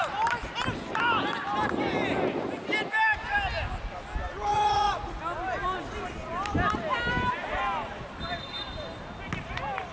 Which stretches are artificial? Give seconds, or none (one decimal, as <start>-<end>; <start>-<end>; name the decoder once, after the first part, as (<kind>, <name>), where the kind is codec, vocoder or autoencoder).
4.5-5.2 (vocoder, Vocos)